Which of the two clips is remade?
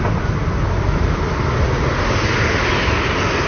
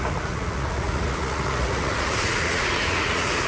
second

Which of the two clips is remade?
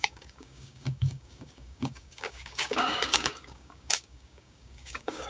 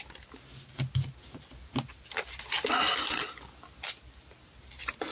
first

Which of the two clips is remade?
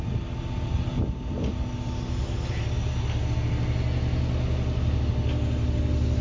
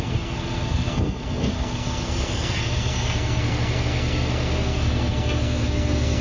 second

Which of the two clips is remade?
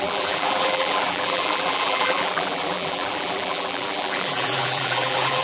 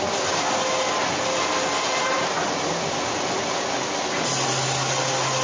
first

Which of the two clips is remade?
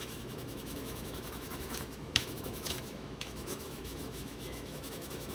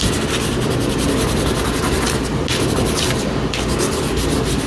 first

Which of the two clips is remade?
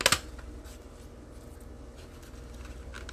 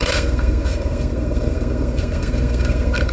second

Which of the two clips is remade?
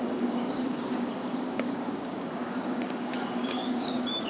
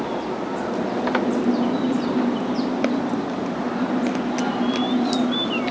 first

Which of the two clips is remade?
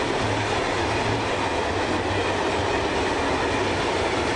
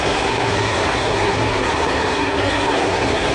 second